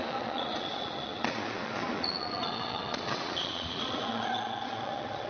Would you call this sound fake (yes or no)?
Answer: yes